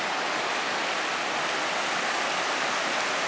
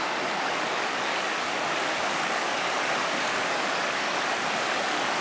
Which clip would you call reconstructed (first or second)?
second